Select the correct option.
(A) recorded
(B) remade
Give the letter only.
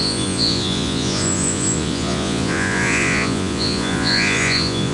B